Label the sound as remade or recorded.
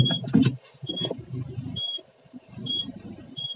remade